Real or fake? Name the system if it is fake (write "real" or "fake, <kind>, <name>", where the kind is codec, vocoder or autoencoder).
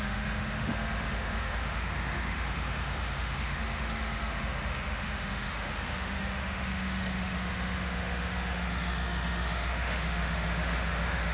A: fake, autoencoder, DAC-VAE